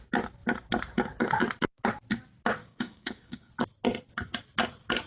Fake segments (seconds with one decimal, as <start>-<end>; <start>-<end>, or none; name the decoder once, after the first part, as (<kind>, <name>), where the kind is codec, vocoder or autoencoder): 2.6-3.5 (codec, DAC)